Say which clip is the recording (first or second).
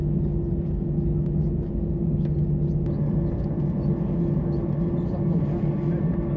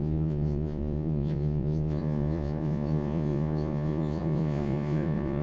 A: first